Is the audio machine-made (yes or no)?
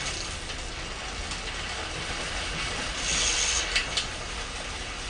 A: no